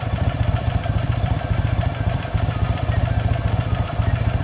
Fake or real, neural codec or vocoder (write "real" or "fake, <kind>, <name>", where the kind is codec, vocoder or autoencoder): fake, vocoder, BigVGAN v2